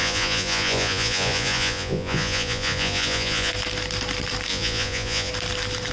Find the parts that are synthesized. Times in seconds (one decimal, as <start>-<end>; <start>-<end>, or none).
0.0-3.5; 4.5-5.3